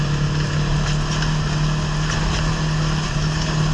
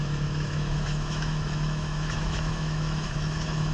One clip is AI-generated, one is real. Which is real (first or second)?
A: first